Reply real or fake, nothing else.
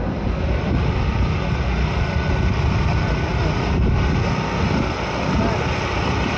real